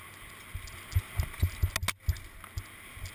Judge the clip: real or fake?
real